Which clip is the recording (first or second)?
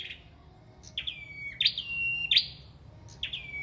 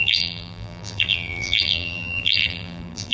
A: first